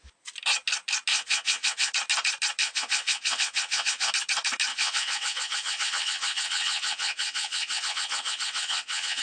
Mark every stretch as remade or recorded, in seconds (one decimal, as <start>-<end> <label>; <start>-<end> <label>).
0.0-1.1 recorded; 1.1-1.9 remade; 1.9-2.6 recorded; 2.6-4.1 remade; 4.1-4.7 recorded; 4.7-9.2 remade